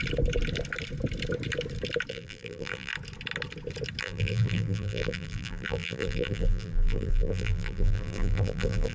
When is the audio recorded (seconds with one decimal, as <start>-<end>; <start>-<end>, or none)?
0.0-2.1; 2.9-4.0